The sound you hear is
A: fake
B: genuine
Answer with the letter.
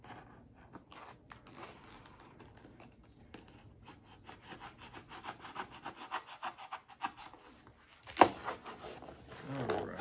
B